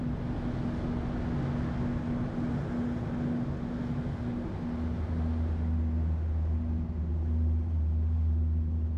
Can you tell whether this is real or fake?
real